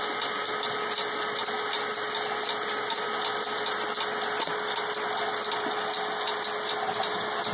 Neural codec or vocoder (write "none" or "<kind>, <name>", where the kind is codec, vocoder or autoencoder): none